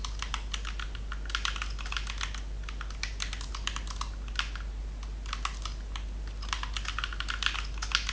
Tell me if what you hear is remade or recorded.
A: recorded